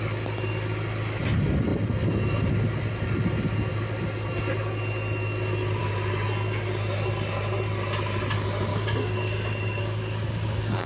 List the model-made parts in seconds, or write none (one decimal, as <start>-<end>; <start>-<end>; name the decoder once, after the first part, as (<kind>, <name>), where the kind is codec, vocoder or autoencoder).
8.7-10.9 (codec, DAC)